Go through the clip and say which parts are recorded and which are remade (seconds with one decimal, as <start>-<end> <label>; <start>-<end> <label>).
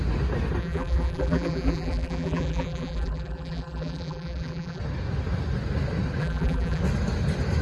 0.0-0.6 recorded; 0.6-4.8 remade; 4.8-6.2 recorded; 6.2-6.8 remade; 6.8-7.6 recorded